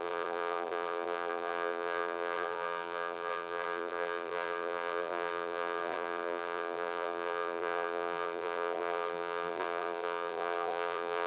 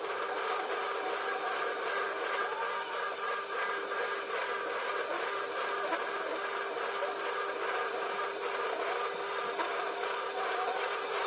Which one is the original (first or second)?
second